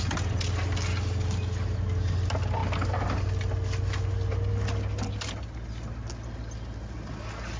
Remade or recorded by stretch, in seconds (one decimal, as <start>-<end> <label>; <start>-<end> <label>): 0.0-7.6 recorded